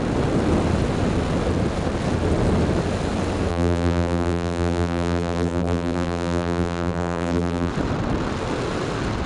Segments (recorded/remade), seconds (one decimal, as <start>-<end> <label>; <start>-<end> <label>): 0.0-3.5 recorded; 3.5-7.7 remade; 7.7-9.3 recorded

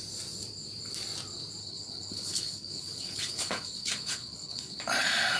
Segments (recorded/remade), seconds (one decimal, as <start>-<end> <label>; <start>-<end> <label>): 0.0-1.6 recorded; 1.6-4.8 remade; 4.8-5.4 recorded

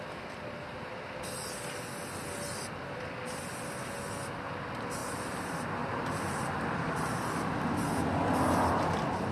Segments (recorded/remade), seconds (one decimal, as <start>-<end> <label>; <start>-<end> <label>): 0.0-5.0 recorded; 5.0-6.3 remade; 6.3-9.3 recorded

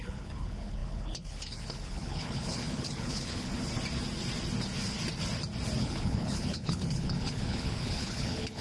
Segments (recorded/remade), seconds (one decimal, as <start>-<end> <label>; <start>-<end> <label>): 0.0-3.5 remade; 3.5-5.8 recorded; 5.8-8.6 remade

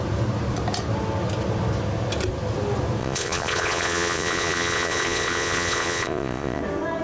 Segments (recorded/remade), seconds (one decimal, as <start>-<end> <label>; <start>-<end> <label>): 0.0-3.0 recorded; 3.0-6.6 remade; 6.6-7.0 recorded

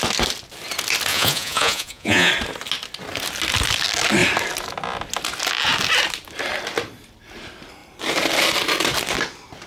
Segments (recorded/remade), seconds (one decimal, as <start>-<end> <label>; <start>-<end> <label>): 0.0-1.1 recorded; 1.1-2.3 remade; 2.3-9.7 recorded

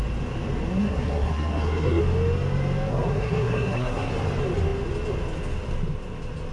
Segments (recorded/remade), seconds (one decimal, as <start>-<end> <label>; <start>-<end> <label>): 0.0-0.8 recorded; 0.8-2.0 remade; 2.0-2.9 recorded; 2.9-4.1 remade; 4.1-6.5 recorded